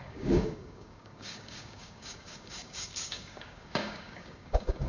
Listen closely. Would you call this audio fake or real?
fake